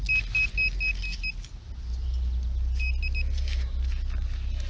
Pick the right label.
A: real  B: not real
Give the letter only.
A